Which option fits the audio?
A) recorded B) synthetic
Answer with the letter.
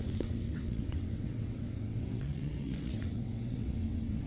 B